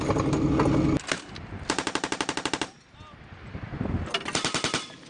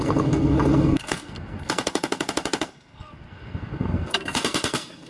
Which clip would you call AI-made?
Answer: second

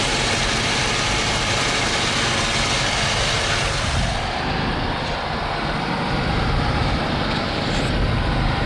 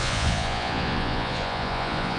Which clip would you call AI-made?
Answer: second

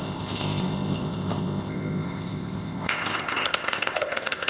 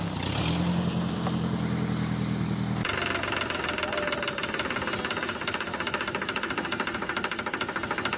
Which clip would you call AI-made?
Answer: first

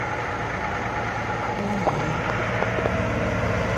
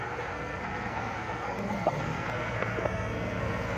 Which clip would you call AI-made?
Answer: second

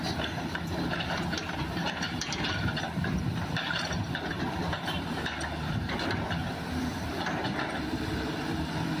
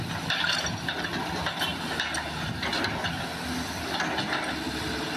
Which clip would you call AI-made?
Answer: first